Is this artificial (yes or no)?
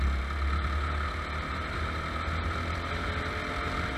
no